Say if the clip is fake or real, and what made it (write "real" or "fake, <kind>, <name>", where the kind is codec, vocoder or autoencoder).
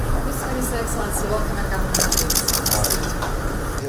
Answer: real